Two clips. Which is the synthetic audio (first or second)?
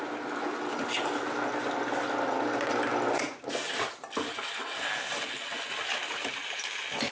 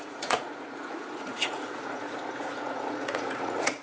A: second